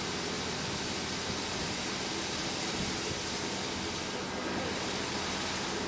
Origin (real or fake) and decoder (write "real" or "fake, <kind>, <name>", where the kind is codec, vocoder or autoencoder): real